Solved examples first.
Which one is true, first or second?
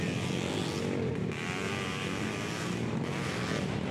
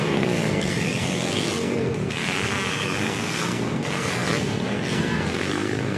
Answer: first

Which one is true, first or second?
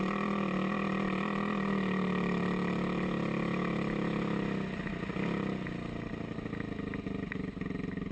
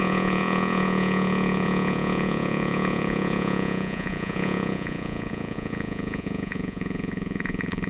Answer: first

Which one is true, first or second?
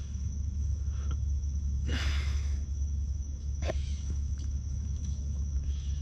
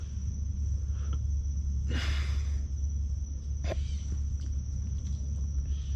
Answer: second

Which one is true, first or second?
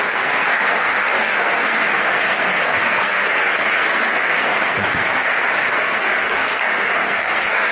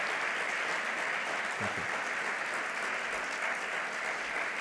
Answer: second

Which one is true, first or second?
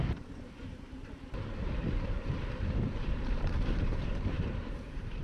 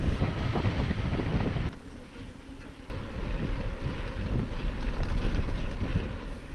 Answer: second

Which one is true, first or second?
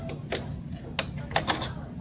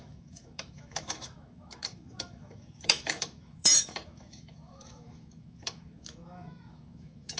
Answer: first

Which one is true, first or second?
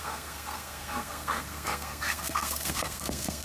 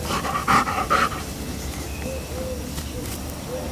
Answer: second